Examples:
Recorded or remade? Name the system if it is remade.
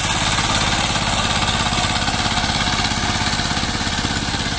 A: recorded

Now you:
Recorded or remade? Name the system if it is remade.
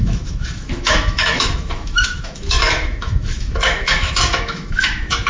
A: remade, autoencoder, DAC-VAE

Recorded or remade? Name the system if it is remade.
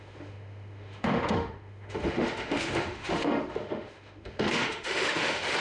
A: remade, autoencoder, DAC-VAE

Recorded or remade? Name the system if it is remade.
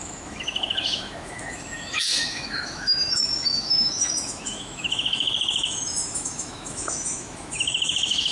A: remade, autoencoder, DAC-VAE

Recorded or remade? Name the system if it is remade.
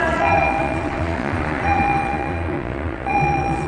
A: remade, vocoder, Vocos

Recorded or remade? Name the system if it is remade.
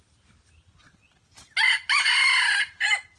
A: recorded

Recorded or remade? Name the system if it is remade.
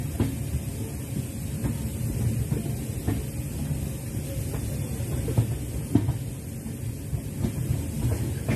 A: recorded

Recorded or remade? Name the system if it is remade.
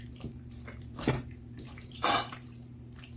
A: remade, vocoder, BigVGAN v2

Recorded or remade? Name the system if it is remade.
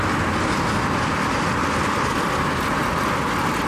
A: recorded